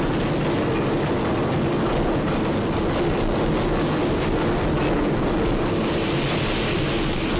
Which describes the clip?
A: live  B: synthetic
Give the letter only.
A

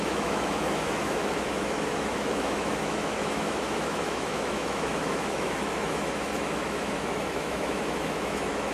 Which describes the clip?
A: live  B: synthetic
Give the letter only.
B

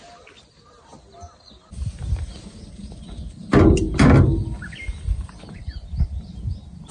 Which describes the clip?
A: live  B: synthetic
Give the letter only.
A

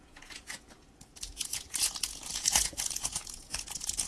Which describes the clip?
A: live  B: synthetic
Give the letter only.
B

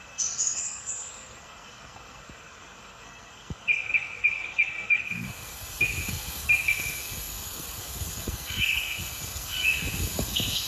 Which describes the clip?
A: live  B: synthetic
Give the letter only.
B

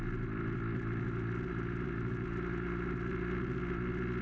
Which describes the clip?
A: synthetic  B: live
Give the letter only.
B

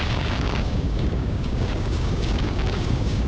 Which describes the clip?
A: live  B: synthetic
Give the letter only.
B